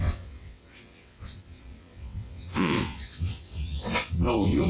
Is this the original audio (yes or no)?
no